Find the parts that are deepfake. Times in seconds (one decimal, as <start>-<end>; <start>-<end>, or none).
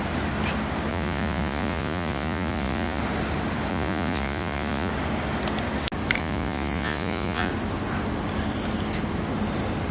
0.9-3.0; 3.7-4.9; 6.2-7.5